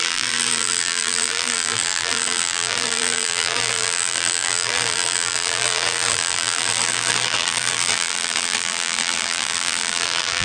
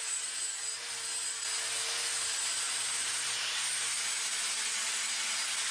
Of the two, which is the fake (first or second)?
first